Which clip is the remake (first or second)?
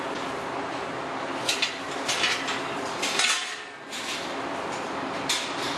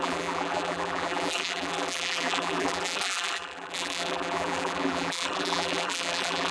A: second